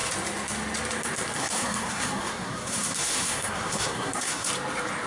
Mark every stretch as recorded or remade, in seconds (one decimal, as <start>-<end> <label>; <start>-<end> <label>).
0.0-1.4 recorded; 1.4-4.5 remade; 4.5-5.1 recorded